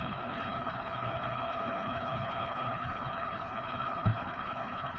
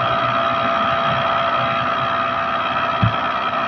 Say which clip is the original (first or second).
second